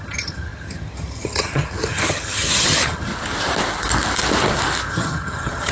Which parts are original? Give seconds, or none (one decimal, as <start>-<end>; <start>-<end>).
3.1-4.9